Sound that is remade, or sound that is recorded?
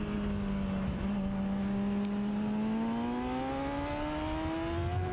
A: recorded